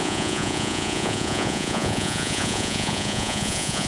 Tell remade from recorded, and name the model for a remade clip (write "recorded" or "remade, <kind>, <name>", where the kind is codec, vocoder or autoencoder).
remade, vocoder, Vocos